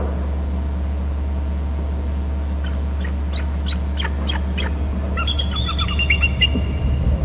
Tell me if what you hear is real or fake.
real